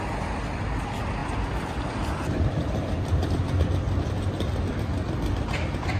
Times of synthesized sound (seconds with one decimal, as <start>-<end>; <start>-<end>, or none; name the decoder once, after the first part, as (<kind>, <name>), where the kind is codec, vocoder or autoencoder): 1.2-3.7 (vocoder, BigVGAN v2)

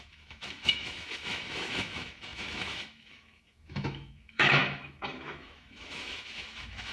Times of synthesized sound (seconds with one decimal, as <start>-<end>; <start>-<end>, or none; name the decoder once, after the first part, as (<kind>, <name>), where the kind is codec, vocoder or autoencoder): 0.0-6.9 (autoencoder, DAC-VAE)

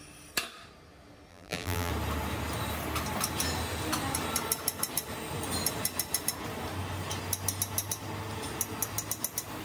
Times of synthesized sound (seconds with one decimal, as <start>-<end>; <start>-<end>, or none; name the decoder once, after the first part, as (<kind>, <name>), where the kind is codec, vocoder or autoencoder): 1.3-1.9 (vocoder, BigVGAN v2)

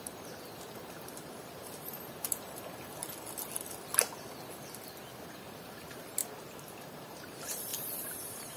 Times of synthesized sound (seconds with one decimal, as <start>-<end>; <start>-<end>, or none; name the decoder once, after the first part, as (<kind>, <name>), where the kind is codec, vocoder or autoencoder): 0.0-3.0 (vocoder, BigVGAN v2); 5.3-6.2; 7.0-8.6

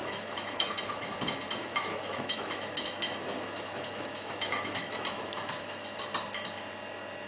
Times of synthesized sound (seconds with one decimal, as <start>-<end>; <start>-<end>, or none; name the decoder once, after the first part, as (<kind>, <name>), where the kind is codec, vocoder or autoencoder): 0.0-1.1 (autoencoder, DAC-VAE); 1.6-6.0

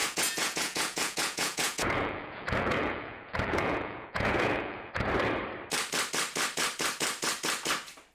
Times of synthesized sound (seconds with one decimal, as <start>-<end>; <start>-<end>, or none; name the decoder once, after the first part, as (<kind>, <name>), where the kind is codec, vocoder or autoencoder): 0.0-4.9 (vocoder, Vocos)